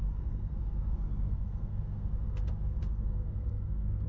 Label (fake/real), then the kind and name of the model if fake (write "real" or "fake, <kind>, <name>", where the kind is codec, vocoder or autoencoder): fake, codec, SNAC